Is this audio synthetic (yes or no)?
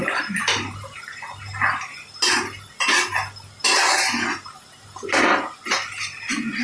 no